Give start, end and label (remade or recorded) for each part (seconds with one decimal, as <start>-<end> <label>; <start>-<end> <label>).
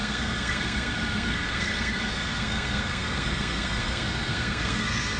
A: 0.0-5.2 remade